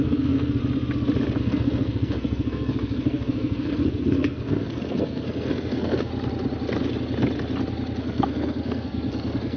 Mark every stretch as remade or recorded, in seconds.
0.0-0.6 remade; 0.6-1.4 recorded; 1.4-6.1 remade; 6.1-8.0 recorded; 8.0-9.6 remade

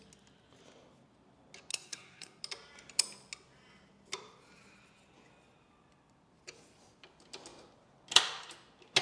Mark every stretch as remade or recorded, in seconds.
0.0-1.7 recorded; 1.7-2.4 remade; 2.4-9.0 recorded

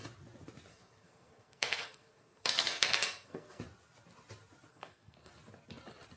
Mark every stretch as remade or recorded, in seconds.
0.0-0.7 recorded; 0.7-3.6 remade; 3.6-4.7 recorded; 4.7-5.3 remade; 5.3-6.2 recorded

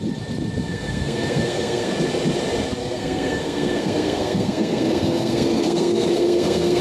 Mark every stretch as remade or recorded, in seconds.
0.0-0.6 recorded; 0.6-1.9 remade; 1.9-2.8 recorded; 2.8-6.8 remade

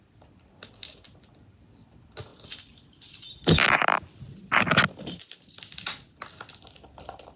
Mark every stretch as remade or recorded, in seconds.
0.0-7.4 recorded